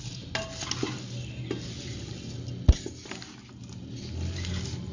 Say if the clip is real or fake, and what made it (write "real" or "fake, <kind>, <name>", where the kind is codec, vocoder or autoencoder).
real